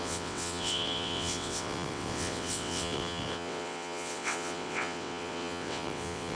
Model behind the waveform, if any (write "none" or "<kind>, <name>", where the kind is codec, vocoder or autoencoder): vocoder, WaveNeXt